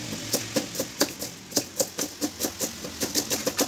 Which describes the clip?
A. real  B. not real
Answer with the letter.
A